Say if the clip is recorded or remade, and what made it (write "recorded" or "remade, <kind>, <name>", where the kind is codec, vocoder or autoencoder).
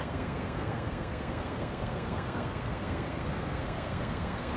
remade, codec, SNAC